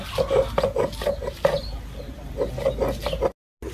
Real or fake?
real